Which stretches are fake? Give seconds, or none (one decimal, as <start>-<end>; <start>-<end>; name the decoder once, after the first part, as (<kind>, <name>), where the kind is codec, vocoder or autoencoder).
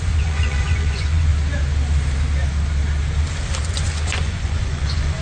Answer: 0.0-1.3 (vocoder, Vocos); 3.7-5.2